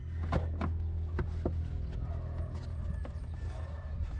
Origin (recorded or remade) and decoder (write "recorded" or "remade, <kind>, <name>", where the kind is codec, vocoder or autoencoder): recorded